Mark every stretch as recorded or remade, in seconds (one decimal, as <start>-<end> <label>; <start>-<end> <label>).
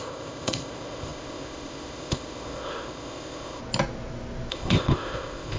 0.0-3.6 remade; 3.6-4.5 recorded; 4.5-5.6 remade